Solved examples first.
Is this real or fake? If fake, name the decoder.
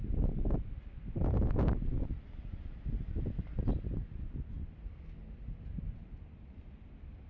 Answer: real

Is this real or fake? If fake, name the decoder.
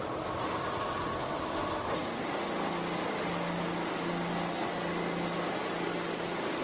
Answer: real